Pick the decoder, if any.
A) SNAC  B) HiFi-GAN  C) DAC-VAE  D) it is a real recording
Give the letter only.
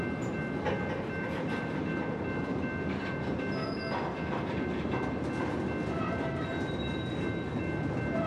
D